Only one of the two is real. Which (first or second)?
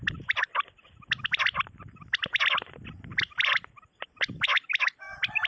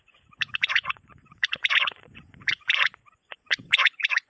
first